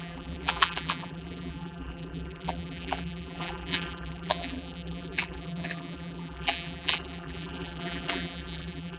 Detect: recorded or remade remade